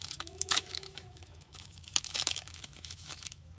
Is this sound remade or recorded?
remade